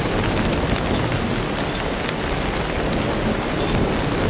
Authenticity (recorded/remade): recorded